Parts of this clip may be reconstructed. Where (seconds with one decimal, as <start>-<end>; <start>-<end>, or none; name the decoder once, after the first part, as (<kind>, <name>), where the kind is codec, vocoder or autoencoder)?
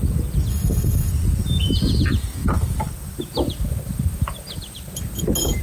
0.5-1.1 (autoencoder, DAC-VAE)